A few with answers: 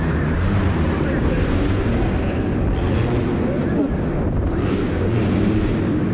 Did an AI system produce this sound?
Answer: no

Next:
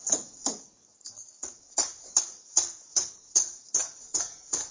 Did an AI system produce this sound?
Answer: yes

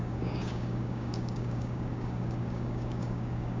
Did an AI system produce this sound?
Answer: yes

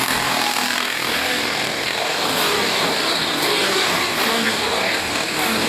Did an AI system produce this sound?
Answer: yes